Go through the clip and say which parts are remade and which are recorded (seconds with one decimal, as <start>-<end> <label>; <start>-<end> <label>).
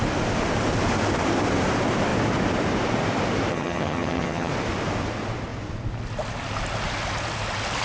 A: 0.0-3.5 recorded; 3.5-4.5 remade; 4.5-7.8 recorded